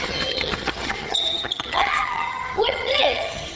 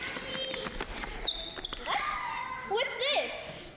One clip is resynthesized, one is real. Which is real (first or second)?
second